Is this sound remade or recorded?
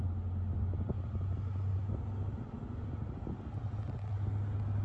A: recorded